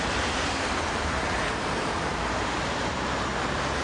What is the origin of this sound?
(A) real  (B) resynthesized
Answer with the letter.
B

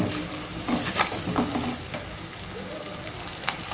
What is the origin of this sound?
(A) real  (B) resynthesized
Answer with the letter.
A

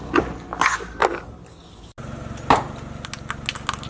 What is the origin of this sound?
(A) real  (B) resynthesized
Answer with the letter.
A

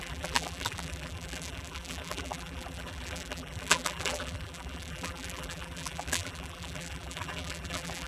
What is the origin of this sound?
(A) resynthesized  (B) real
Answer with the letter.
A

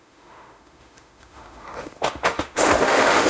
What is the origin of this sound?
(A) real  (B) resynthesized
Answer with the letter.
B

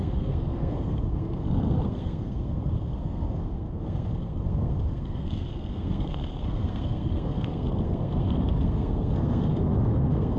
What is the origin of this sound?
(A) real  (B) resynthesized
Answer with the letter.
B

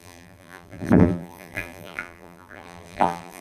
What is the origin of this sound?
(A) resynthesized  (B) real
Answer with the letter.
A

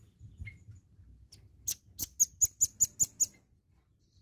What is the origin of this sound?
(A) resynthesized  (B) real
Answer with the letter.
B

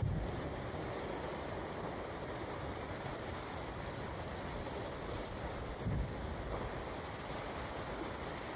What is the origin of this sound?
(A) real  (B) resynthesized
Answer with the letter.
A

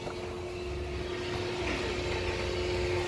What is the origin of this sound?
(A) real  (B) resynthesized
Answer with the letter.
A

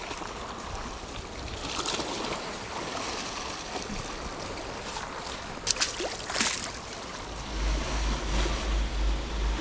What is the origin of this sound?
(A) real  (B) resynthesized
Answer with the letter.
A